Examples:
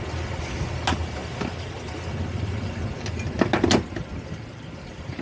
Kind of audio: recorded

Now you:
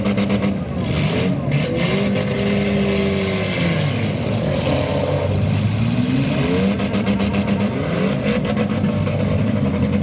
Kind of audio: recorded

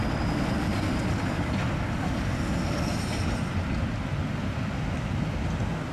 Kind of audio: recorded